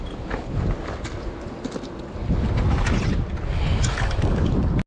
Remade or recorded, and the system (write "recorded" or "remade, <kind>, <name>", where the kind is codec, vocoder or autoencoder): recorded